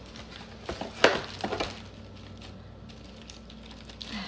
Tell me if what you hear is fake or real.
real